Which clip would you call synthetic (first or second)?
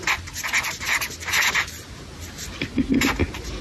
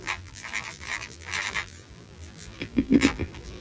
second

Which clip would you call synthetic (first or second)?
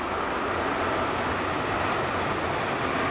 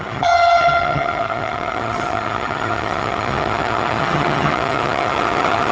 second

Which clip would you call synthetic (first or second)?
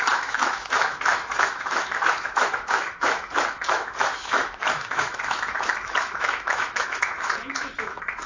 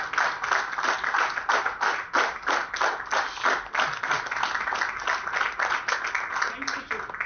first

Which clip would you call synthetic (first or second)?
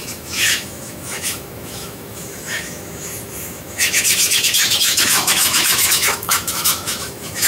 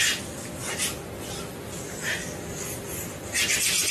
first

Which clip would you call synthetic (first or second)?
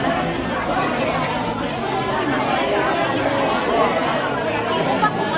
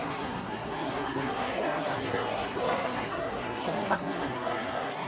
second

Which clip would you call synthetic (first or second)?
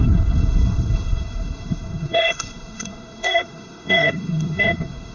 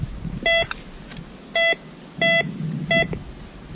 first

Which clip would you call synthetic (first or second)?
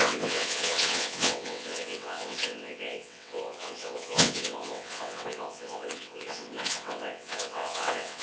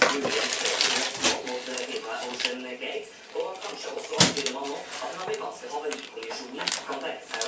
first